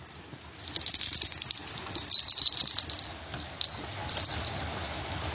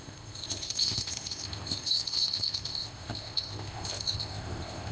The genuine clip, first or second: first